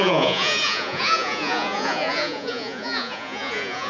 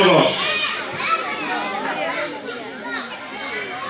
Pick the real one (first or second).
second